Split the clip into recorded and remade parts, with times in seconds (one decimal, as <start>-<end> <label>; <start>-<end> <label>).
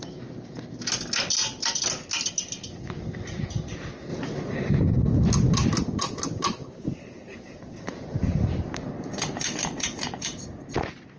0.0-4.1 recorded; 4.1-4.7 remade; 4.7-6.6 recorded; 6.6-10.4 remade; 10.4-11.2 recorded